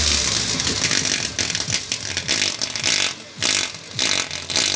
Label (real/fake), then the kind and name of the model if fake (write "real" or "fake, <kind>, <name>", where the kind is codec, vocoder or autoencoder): real